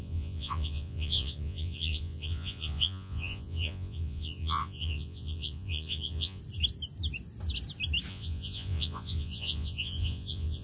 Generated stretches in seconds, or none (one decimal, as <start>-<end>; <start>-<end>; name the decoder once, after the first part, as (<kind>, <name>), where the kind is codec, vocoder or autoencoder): 0.0-6.4 (vocoder, Vocos); 8.1-10.6